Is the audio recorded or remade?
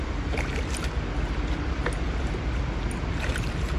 remade